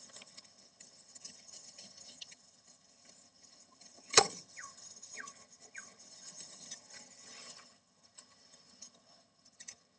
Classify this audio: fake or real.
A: fake